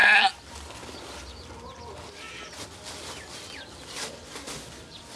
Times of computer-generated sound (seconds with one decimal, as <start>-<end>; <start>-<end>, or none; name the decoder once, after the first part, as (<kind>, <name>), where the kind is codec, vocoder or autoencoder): none